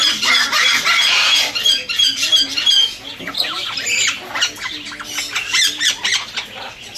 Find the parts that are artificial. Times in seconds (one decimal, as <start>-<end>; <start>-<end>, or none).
6.1-7.0